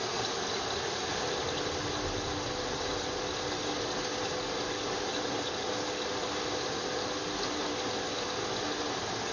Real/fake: real